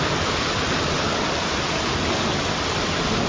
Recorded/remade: recorded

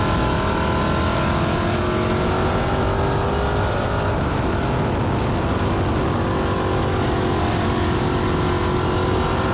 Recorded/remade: recorded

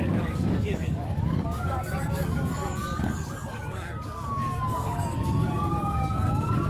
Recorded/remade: remade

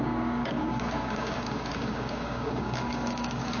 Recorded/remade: remade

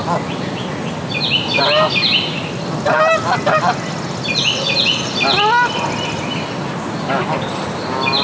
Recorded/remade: recorded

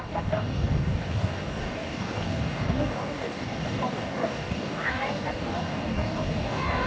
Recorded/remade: remade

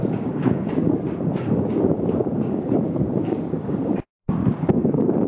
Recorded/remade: remade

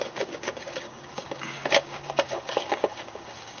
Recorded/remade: remade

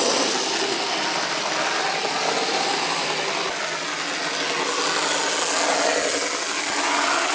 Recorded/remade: recorded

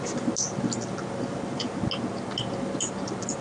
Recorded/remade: recorded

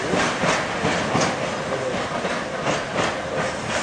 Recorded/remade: recorded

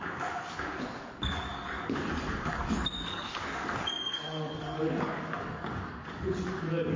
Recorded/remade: remade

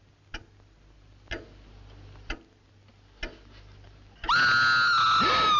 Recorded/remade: recorded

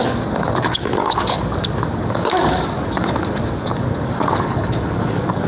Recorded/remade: remade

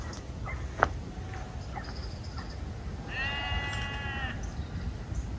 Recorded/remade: recorded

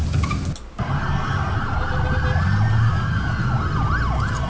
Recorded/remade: recorded